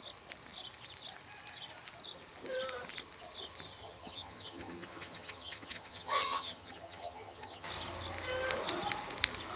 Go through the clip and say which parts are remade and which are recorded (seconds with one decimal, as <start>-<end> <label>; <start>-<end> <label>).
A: 0.0-3.8 recorded; 3.8-7.7 remade; 7.7-9.6 recorded